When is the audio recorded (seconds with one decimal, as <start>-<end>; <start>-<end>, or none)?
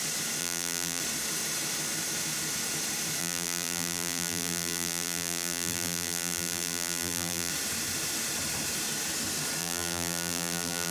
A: 0.0-0.4; 1.0-3.2; 7.5-9.6